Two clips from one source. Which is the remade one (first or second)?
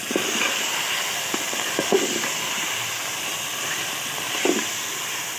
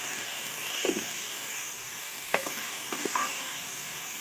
second